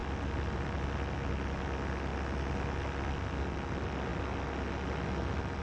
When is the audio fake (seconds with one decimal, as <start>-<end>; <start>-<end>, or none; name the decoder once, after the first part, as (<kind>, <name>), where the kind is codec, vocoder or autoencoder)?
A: none